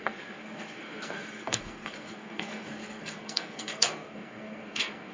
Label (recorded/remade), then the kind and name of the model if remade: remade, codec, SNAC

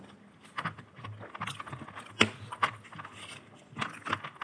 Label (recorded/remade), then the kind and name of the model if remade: recorded